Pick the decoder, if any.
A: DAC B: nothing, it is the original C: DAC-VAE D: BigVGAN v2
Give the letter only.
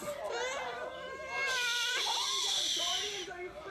B